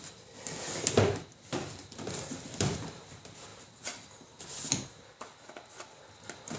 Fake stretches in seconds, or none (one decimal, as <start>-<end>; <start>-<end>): none